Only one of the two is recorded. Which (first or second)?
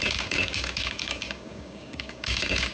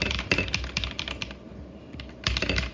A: second